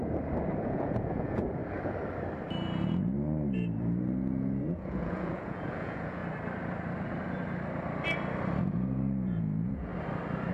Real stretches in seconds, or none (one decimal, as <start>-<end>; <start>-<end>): 0.0-0.5; 1.6-3.8; 6.2-8.6; 9.9-10.5